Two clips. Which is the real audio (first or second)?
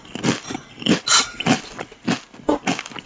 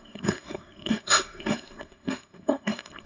first